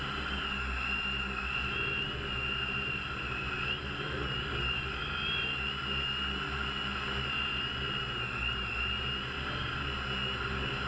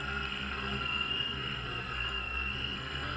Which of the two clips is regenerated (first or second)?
second